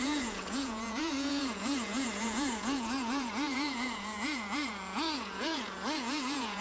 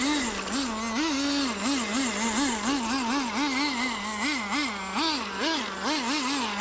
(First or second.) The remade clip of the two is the first